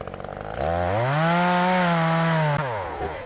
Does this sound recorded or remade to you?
recorded